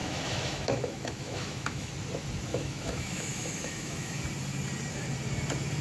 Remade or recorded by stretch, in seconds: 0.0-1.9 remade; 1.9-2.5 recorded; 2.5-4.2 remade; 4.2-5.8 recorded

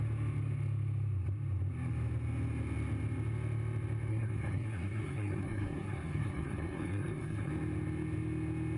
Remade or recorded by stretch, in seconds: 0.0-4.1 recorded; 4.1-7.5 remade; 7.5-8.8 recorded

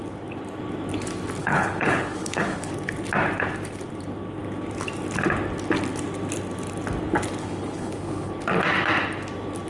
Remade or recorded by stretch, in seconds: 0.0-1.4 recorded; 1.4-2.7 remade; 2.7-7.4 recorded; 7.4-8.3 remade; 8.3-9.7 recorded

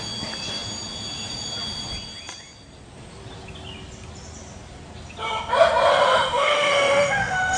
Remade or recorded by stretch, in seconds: 0.0-5.9 recorded; 5.9-7.6 remade

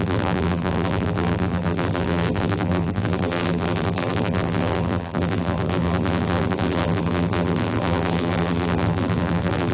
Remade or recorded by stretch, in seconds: 0.0-9.7 remade